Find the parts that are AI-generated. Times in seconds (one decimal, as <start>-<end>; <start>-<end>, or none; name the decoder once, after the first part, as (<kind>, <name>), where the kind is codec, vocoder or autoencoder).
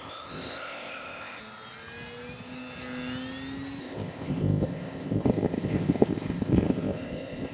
0.0-1.4 (codec, ZipCodec); 3.8-7.5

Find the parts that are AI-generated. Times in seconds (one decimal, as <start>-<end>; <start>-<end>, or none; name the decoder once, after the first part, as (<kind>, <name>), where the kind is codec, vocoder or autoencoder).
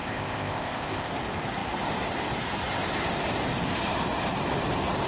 0.0-1.1 (codec, ZipCodec)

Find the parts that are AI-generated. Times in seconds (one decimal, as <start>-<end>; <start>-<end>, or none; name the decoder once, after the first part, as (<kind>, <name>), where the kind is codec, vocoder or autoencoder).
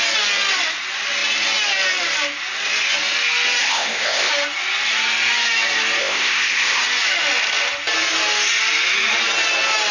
3.6-4.3 (codec, ZipCodec); 6.0-6.8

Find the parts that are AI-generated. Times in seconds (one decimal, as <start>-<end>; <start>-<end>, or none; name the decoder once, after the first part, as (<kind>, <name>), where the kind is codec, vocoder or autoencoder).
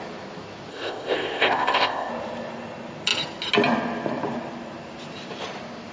0.7-2.1 (codec, ZipCodec)